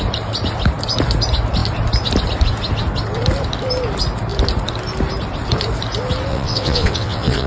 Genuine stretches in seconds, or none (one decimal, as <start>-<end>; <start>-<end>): 0.0-6.3